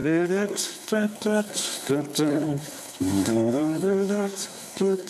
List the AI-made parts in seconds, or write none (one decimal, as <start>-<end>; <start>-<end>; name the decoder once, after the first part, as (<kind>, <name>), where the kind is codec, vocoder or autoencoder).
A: 0.0-1.9 (codec, SNAC); 2.3-5.1